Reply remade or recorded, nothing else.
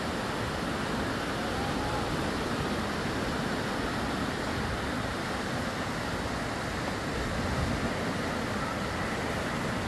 recorded